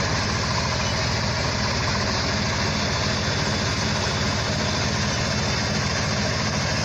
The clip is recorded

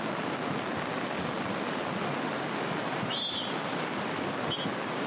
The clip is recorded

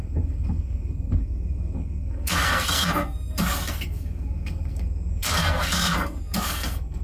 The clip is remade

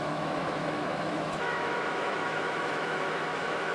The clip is remade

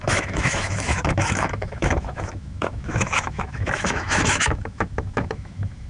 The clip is remade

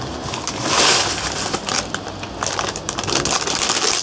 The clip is recorded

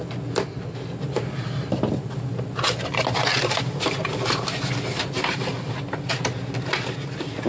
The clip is recorded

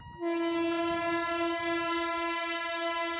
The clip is recorded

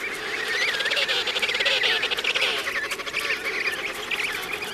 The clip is recorded